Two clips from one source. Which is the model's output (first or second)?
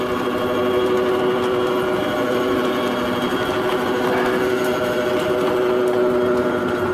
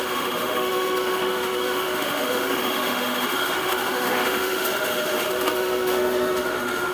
second